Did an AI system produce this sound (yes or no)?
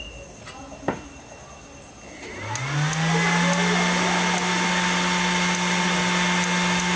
no